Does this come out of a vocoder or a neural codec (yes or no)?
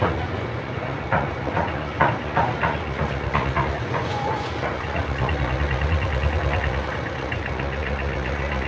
yes